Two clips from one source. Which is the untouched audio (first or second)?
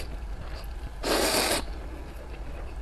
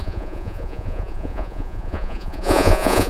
first